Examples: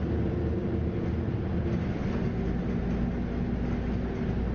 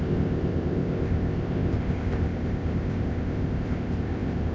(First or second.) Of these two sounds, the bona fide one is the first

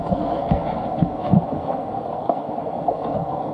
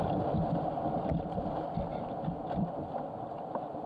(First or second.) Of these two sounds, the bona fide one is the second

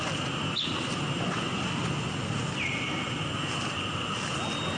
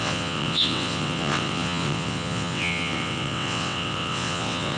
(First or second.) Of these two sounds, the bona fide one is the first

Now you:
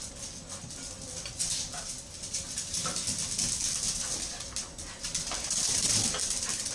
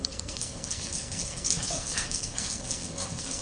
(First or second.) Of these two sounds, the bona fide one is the first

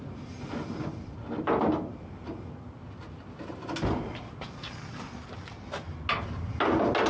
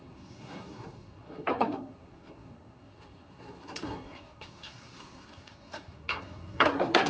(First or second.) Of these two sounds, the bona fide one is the first